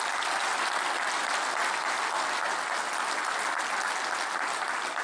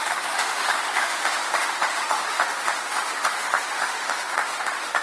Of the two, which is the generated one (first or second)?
second